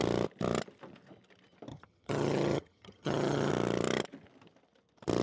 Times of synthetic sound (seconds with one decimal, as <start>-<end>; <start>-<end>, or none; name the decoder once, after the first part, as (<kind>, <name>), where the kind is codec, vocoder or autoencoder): 1.7-3.5 (vocoder, HiFi-GAN)